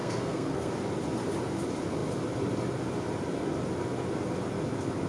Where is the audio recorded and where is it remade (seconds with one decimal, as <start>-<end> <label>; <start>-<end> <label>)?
0.0-0.7 remade; 0.7-5.1 recorded